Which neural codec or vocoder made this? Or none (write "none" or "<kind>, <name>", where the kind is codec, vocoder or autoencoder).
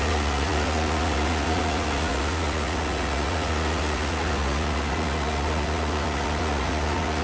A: vocoder, Vocos